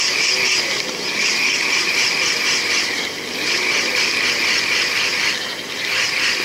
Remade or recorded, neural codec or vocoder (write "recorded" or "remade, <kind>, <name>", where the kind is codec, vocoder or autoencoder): recorded